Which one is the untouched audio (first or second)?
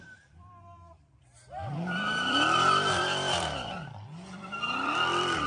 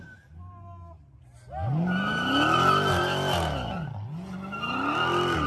second